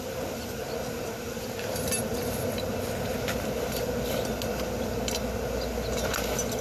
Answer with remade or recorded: recorded